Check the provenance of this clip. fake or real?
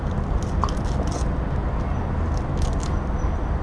real